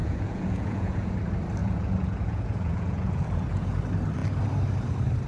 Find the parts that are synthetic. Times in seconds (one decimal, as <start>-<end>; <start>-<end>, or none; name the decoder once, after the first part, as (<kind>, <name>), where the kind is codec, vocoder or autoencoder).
0.0-1.1 (vocoder, Vocos); 1.6-3.8